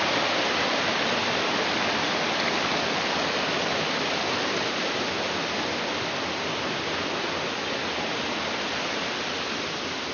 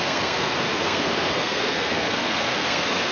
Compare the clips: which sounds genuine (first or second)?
first